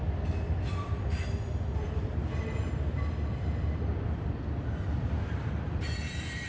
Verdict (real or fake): fake